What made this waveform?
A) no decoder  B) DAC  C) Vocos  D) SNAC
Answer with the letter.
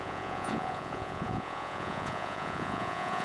C